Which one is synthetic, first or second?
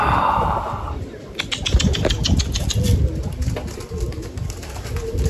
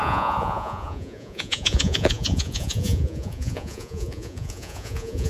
second